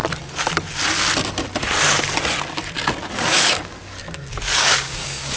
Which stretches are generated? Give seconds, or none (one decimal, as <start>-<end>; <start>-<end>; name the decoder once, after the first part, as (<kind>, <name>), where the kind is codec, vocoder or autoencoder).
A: 3.0-5.4 (codec, DAC)